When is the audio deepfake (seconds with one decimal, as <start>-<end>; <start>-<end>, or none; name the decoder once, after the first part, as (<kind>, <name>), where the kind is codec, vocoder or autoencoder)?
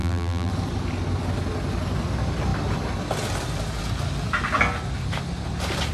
0.0-0.5 (vocoder, BigVGAN v2)